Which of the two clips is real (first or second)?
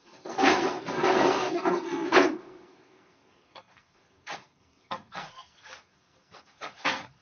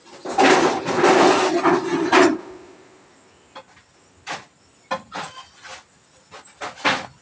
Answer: second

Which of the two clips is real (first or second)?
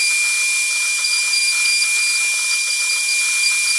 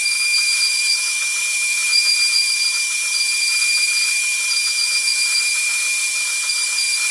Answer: first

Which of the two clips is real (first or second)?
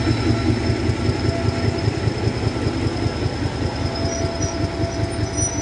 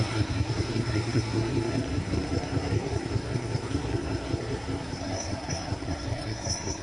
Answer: first